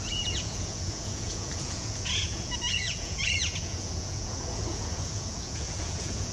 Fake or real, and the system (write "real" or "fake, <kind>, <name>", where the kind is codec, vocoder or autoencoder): fake, vocoder, Vocos